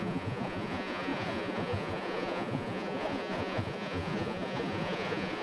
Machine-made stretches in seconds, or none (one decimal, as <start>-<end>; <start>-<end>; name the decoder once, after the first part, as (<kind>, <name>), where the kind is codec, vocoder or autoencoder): 0.0-5.4 (vocoder, Vocos)